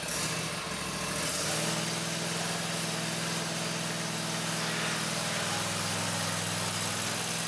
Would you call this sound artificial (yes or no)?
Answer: no